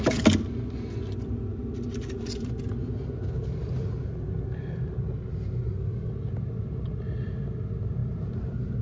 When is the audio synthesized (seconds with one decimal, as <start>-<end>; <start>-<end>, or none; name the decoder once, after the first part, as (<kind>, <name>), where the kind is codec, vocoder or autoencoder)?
8.0-8.8 (vocoder, BigVGAN v2)